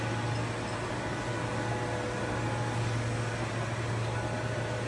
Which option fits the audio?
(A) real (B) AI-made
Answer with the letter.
A